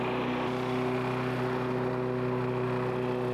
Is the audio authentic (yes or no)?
yes